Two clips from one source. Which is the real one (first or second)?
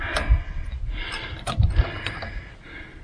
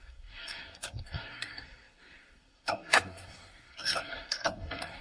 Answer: first